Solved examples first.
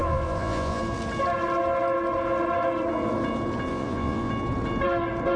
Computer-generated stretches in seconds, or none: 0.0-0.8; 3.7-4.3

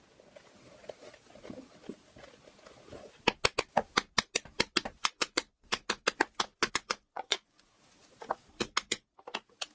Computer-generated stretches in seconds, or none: 5.0-5.7; 6.5-7.7

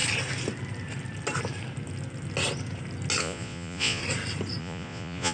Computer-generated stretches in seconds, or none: 3.2-4.0; 4.6-5.3